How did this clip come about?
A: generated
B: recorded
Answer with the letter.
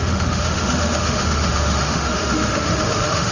A